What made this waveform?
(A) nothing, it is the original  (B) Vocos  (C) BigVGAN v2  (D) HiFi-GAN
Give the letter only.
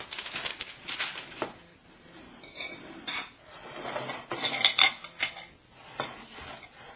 A